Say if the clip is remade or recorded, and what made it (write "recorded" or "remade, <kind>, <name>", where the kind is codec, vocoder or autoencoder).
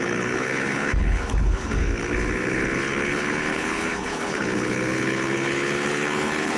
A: remade, codec, HILCodec